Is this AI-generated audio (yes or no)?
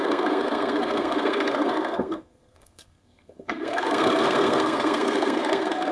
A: yes